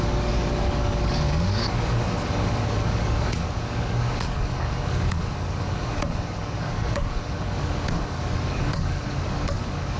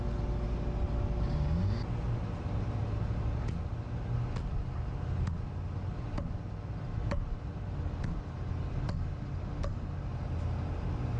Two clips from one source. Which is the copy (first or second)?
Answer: first